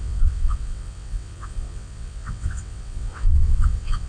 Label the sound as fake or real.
fake